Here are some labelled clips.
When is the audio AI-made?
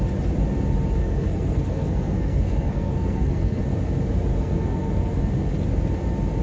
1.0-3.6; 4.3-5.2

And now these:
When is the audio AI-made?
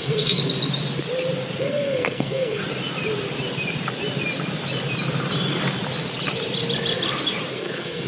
0.0-0.4; 1.6-2.6; 7.5-8.1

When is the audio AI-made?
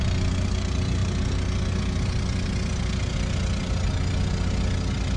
none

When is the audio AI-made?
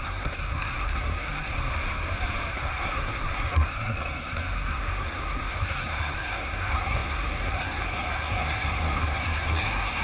0.0-1.7; 2.5-10.0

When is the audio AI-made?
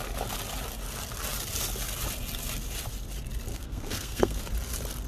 3.5-4.4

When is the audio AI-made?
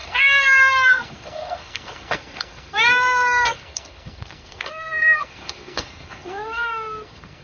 0.0-7.4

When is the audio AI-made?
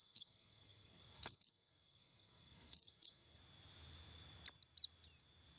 0.0-3.4